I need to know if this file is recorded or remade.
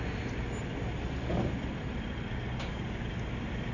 recorded